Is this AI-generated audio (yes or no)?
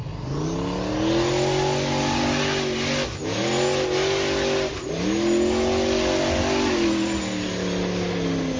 no